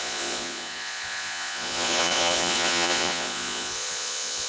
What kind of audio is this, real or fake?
fake